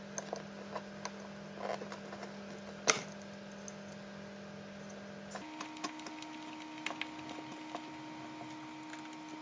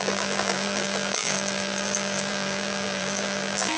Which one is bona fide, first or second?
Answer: first